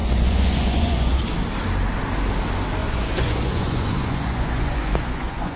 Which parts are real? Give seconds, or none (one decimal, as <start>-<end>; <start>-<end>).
1.2-2.8